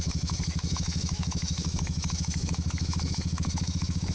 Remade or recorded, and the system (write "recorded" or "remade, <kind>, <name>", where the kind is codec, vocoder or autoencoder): remade, autoencoder, DAC-VAE